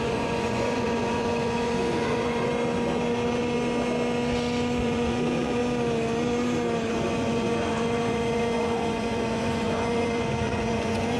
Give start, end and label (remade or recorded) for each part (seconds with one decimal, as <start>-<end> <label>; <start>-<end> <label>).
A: 0.0-2.5 remade; 2.5-4.8 recorded; 4.8-5.6 remade; 5.6-6.9 recorded; 6.9-11.2 remade